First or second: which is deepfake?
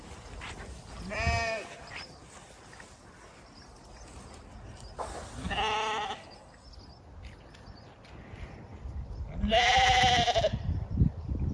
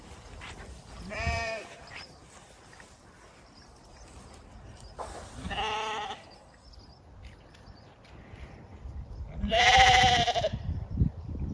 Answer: second